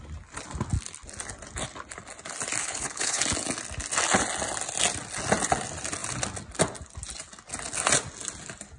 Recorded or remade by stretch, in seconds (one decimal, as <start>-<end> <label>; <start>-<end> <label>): 0.0-2.6 recorded; 2.6-3.2 remade; 3.2-8.8 recorded